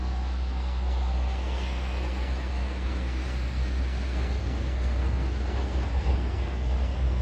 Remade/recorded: remade